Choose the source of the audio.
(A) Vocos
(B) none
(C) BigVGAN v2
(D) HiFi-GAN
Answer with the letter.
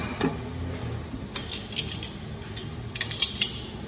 B